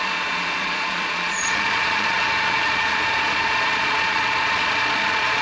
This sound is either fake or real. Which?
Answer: fake